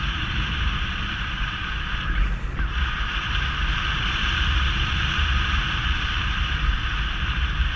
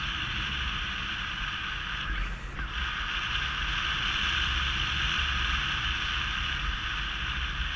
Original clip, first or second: second